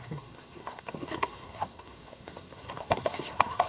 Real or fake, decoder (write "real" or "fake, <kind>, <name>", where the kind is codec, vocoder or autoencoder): fake, codec, SNAC